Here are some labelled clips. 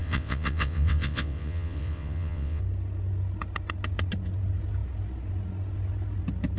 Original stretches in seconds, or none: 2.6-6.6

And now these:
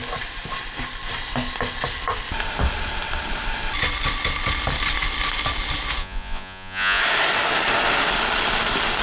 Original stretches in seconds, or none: 0.0-6.0; 7.0-9.0

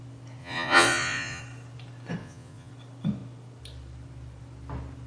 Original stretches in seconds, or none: 0.0-0.4; 1.4-2.2; 2.7-5.1

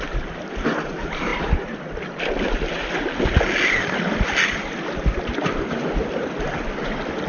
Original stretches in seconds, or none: 0.0-7.3

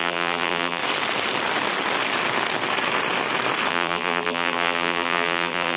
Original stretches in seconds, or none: 0.8-3.7

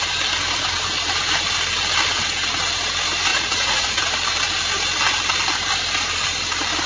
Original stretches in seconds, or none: 0.0-3.3; 4.0-6.9

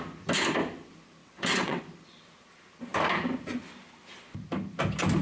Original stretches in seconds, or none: 0.0-1.2; 1.8-5.2

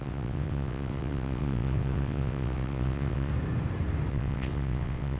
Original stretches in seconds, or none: 3.3-4.1